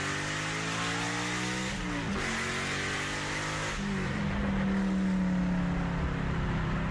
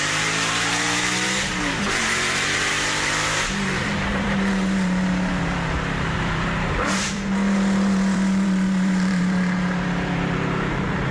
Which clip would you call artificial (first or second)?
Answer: second